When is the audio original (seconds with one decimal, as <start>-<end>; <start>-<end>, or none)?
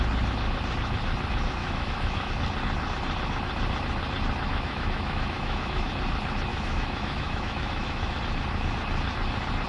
0.0-1.6; 2.3-4.5; 5.9-6.5; 8.2-9.7